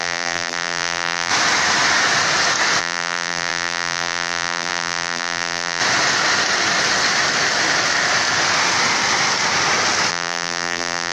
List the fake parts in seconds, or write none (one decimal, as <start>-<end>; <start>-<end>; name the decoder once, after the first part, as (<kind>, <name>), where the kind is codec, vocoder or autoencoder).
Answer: 0.0-1.3 (vocoder, BigVGAN v2); 2.8-5.8; 10.1-11.1